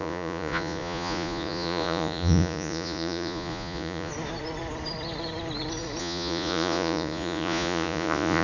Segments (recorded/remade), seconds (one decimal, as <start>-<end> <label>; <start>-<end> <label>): 0.0-4.1 remade; 4.1-6.0 recorded; 6.0-8.4 remade